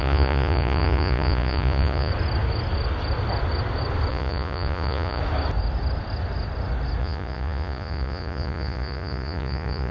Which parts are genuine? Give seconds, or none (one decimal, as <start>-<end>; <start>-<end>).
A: 2.1-4.1; 5.2-7.0